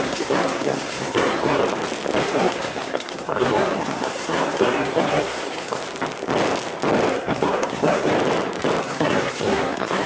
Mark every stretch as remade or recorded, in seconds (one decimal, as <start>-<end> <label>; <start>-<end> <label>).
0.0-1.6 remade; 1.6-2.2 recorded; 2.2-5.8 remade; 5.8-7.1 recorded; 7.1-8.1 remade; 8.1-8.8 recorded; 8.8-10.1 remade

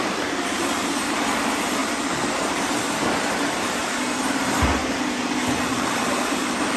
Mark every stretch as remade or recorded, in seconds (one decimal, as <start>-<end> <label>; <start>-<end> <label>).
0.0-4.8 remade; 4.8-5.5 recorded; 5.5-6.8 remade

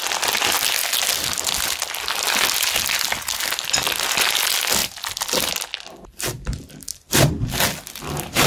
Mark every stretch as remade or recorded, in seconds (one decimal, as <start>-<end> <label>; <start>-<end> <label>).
0.0-8.5 recorded

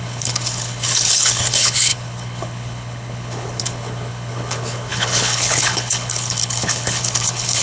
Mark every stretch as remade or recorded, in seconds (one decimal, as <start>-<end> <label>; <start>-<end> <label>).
0.0-7.6 remade